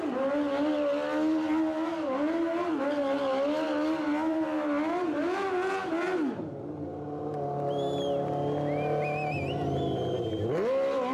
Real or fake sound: real